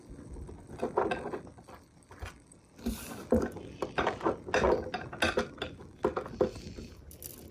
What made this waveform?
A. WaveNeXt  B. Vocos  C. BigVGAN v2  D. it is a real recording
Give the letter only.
D